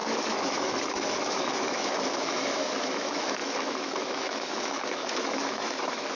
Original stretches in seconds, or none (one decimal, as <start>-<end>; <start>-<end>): none